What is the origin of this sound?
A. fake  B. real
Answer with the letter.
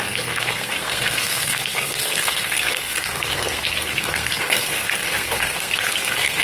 A